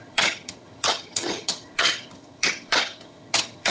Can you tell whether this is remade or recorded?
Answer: remade